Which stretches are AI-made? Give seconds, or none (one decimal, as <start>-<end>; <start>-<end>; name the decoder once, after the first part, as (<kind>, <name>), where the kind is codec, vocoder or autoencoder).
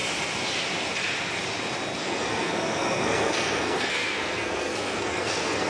2.0-5.7 (codec, SNAC)